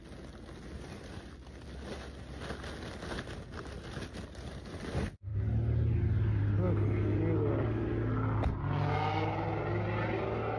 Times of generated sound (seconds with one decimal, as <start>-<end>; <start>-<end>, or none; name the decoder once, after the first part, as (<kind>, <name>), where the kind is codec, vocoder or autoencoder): none